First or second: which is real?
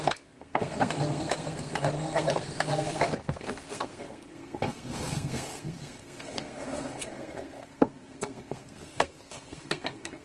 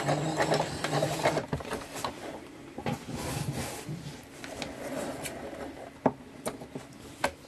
second